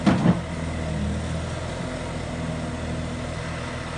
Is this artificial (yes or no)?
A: no